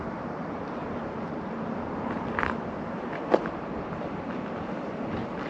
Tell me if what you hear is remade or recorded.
recorded